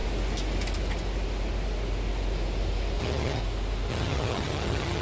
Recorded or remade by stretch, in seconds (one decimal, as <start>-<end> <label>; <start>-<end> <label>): 0.0-3.0 recorded; 3.0-3.4 remade; 3.4-3.9 recorded; 3.9-5.0 remade

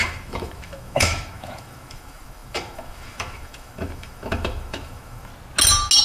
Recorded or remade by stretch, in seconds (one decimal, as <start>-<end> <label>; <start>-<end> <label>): 0.0-5.3 remade; 5.3-6.0 recorded